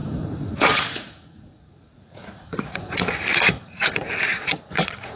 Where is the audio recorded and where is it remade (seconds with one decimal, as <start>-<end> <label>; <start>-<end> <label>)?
0.0-5.2 remade